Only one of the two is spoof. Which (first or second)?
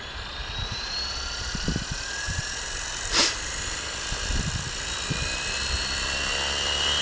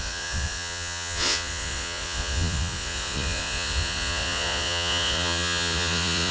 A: second